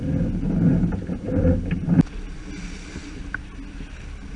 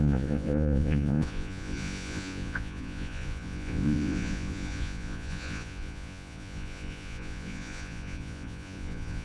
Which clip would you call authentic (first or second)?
first